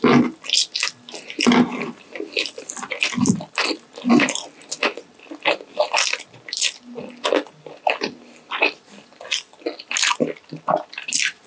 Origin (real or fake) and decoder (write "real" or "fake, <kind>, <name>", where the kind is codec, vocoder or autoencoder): real